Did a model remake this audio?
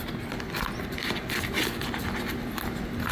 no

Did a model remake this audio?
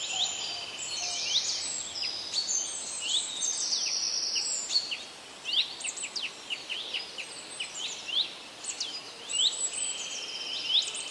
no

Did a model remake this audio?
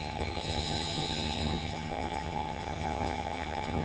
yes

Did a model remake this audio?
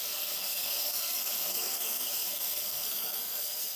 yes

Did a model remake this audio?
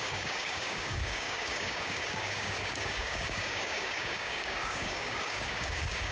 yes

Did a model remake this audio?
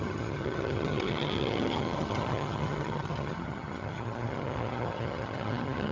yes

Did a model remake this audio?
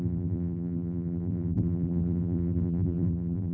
yes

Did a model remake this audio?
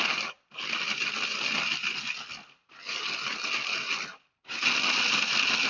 no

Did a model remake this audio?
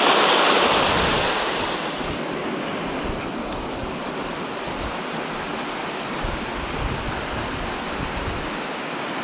no